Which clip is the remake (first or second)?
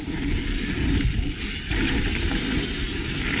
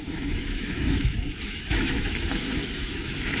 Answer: second